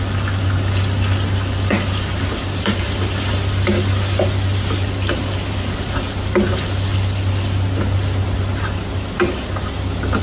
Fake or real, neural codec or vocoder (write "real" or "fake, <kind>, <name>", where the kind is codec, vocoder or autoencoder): real